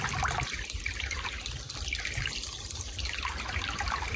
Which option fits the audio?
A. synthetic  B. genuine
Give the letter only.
B